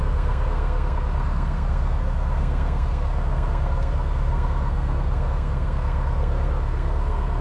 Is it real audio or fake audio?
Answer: fake